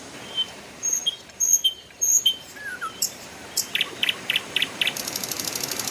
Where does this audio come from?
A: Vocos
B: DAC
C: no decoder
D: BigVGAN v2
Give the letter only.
D